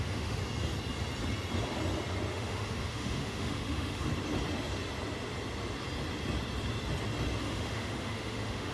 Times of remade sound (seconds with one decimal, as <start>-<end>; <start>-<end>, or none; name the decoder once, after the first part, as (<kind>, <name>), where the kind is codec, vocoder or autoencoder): 0.0-0.4 (autoencoder, DAC-VAE); 2.3-4.1; 7.4-8.7